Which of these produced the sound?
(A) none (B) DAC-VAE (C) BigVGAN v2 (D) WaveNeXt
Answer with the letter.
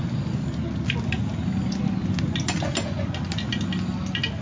A